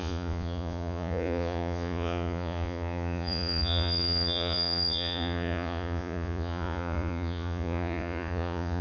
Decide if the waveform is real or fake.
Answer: fake